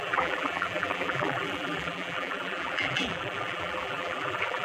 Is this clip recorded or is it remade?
remade